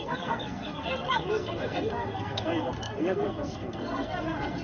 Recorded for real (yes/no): no